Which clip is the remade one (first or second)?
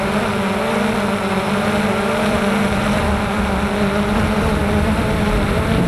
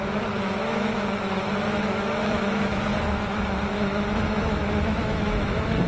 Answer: second